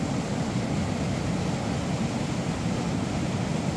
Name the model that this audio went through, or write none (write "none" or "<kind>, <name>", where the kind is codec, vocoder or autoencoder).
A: none